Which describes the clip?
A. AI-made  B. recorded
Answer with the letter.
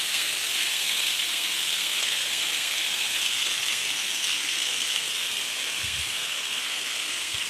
A